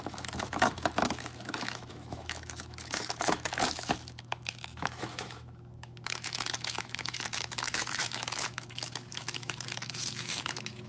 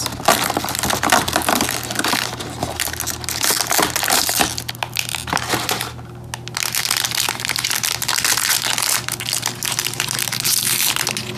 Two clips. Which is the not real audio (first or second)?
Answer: first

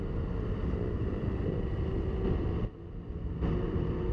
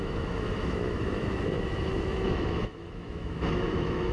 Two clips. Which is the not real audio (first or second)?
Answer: second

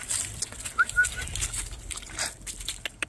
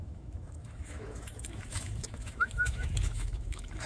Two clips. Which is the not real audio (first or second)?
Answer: second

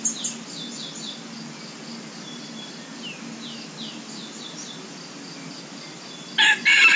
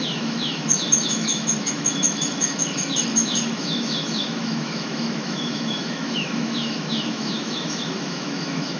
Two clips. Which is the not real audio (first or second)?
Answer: second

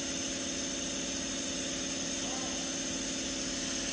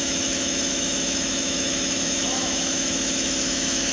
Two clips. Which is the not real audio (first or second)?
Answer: second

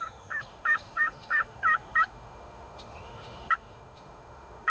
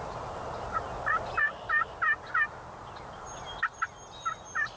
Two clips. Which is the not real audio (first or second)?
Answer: first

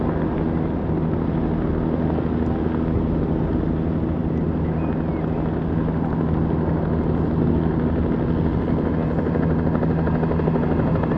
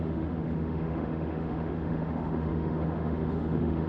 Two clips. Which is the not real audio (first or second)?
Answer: second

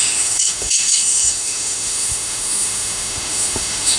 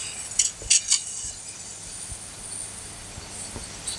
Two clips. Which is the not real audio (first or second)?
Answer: first